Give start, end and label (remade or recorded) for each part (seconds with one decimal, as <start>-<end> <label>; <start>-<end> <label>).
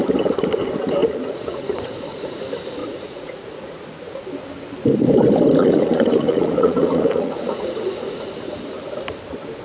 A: 0.0-1.0 recorded; 1.0-2.4 remade; 2.4-2.8 recorded; 2.8-4.3 remade; 4.3-5.6 recorded; 5.6-8.3 remade; 8.3-9.6 recorded